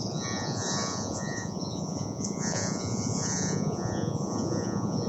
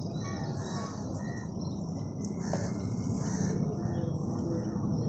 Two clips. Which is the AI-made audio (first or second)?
first